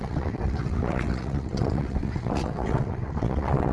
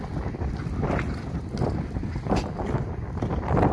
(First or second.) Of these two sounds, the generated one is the first